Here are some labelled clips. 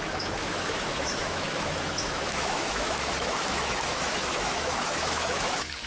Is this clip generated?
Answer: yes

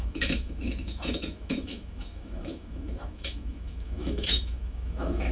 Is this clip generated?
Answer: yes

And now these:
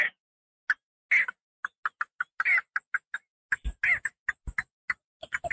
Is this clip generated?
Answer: no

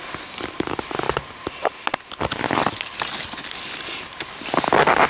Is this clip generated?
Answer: no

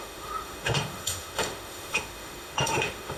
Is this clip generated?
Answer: yes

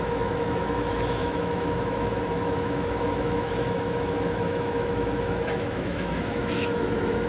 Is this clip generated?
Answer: yes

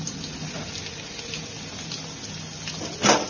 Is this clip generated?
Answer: no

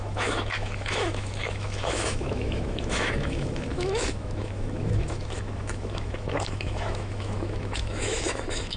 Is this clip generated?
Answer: yes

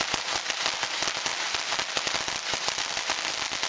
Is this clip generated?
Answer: no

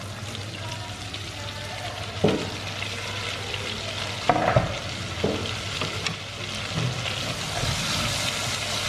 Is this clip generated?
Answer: no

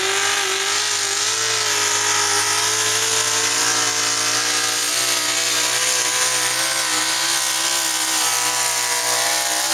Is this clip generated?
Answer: no